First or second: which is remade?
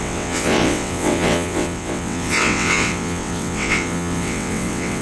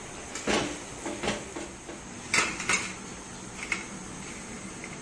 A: first